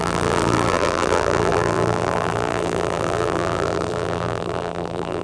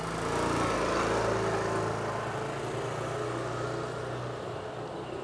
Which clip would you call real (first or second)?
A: second